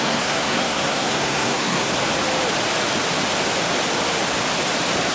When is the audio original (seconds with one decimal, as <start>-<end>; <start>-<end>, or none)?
1.9-5.1